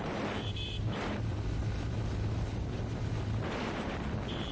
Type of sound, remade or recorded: remade